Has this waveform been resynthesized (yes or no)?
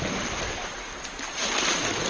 no